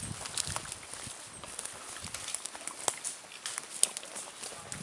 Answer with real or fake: real